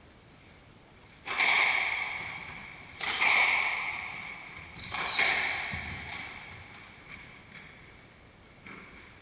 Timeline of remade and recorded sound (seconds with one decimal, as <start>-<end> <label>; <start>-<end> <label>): 0.0-2.6 recorded; 2.6-7.4 remade; 7.4-9.2 recorded

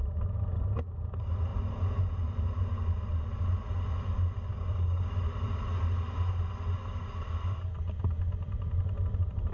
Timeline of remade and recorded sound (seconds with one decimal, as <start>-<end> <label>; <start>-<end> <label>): 0.0-4.5 recorded; 4.5-5.1 remade; 5.1-9.5 recorded

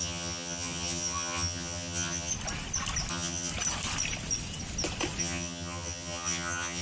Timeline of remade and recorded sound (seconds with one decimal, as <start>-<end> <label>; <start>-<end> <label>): 0.0-2.3 remade; 2.3-3.1 recorded; 3.1-3.5 remade; 3.5-5.2 recorded; 5.2-6.8 remade

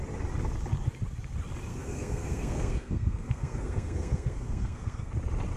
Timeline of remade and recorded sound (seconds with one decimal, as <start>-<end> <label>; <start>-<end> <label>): 0.0-1.7 recorded; 1.7-5.1 remade; 5.1-5.6 recorded